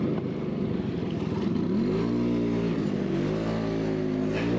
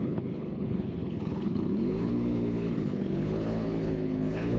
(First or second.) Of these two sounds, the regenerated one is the second